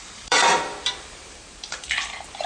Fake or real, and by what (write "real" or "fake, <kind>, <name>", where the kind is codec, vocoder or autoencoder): fake, vocoder, BigVGAN v2